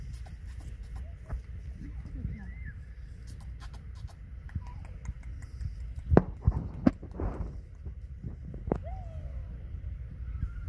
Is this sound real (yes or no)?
yes